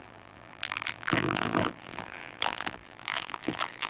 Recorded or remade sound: remade